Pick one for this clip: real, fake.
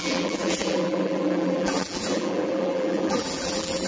fake